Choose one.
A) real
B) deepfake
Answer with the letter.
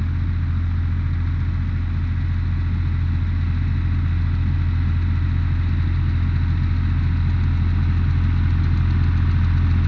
A